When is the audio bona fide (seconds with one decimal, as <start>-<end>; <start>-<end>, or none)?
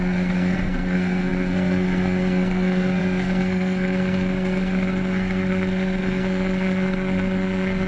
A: none